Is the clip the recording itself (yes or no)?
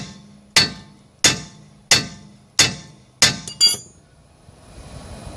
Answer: yes